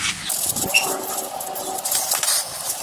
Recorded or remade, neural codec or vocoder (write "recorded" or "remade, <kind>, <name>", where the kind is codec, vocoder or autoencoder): recorded